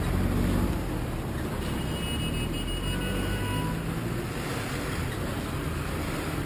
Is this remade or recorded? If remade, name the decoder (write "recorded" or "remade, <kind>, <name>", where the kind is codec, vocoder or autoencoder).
recorded